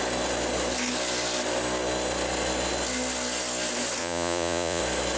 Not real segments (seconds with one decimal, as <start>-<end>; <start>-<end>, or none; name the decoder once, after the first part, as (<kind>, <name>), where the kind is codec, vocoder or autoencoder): 4.0-4.8 (vocoder, Vocos)